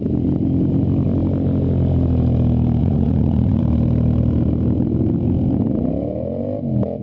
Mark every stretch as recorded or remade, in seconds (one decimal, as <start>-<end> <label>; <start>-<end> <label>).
0.0-2.8 recorded; 2.8-3.6 remade; 3.6-7.0 recorded

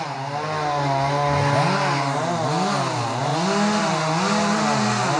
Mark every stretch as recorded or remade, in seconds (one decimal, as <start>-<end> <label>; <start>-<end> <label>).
0.0-5.2 recorded

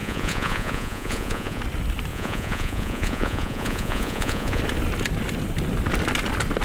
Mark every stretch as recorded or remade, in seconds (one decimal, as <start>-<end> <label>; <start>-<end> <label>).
0.0-1.6 remade; 1.6-2.1 recorded; 2.1-4.6 remade; 4.6-6.6 recorded